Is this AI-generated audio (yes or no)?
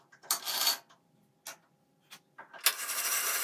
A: no